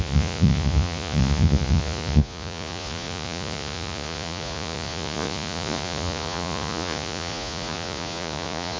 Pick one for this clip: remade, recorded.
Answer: remade